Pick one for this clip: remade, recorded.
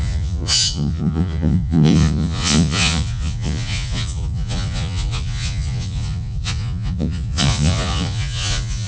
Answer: remade